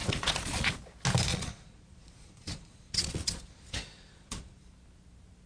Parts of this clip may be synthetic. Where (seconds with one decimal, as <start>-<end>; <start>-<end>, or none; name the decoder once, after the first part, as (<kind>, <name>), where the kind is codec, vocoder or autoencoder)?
0.0-0.7 (vocoder, Vocos); 1.3-4.6